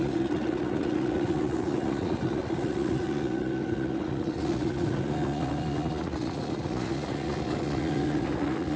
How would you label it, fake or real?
fake